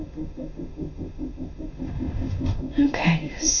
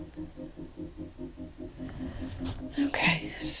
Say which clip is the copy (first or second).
first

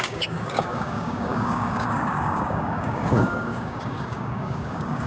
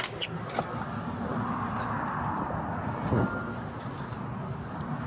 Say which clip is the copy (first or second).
first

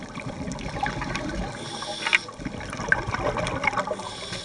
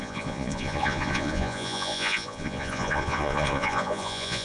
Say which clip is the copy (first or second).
second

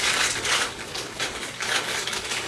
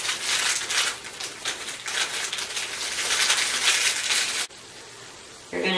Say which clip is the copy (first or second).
first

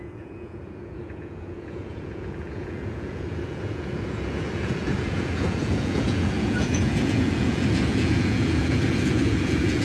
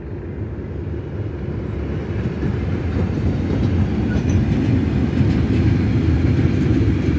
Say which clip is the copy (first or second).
first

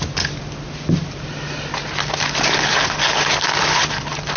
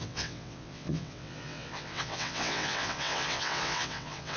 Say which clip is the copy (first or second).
second